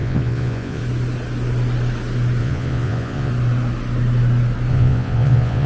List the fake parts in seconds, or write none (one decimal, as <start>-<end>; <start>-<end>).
0.0-0.8; 2.4-3.3; 4.7-5.7